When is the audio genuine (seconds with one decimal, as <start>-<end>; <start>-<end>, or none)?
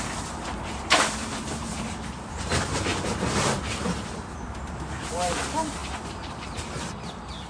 none